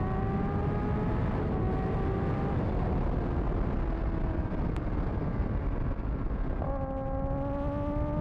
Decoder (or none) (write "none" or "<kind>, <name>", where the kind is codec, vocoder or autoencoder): none